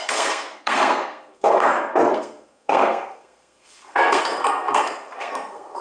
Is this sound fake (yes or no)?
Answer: yes